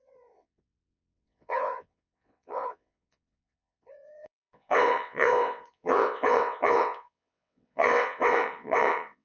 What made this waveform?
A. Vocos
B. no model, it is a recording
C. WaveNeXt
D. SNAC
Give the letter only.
C